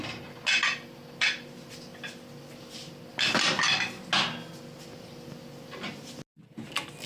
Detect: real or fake real